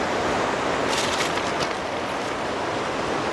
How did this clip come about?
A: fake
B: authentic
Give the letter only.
B